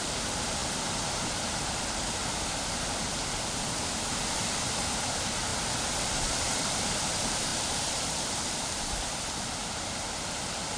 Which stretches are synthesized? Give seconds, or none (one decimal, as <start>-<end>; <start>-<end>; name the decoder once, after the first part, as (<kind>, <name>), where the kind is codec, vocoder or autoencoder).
0.0-3.2 (vocoder, BigVGAN v2); 4.1-5.5; 6.1-10.8

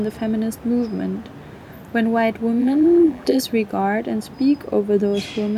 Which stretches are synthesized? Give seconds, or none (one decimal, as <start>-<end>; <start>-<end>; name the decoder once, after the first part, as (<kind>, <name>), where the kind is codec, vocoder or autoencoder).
2.6-3.4 (vocoder, BigVGAN v2)

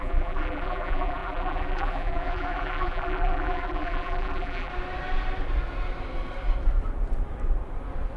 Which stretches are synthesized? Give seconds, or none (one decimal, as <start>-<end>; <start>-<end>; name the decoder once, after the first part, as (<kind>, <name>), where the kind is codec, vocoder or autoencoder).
0.0-4.7 (vocoder, BigVGAN v2)

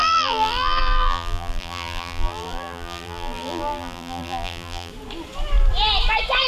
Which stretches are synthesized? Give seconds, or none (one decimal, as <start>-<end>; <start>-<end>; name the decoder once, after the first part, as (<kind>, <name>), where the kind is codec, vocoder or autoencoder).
0.0-4.9 (vocoder, BigVGAN v2)

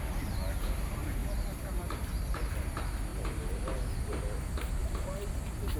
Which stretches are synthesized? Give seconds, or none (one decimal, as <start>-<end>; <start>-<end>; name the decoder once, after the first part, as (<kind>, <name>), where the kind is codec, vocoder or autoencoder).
4.8-5.8 (vocoder, BigVGAN v2)